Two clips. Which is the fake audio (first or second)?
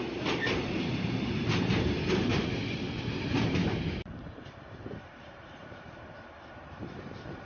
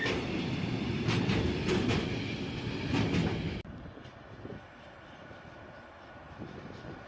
first